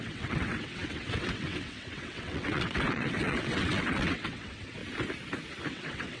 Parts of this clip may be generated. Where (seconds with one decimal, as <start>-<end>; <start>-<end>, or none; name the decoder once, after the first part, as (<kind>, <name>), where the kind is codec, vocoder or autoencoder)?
0.0-4.8 (vocoder, WaveNeXt); 5.7-6.2